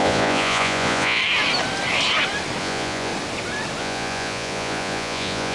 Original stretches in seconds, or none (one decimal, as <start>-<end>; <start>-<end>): 1.2-2.6; 3.1-3.8